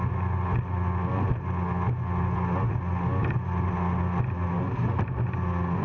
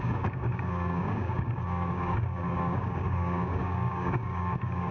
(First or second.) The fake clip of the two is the second